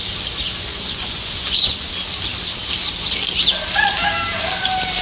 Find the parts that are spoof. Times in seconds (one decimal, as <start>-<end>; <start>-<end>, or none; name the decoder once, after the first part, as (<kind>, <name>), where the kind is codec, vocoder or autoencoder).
0.7-1.9 (vocoder, Vocos)